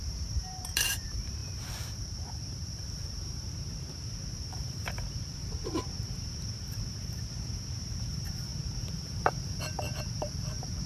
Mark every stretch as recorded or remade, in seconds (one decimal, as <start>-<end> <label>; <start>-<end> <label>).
0.0-10.9 remade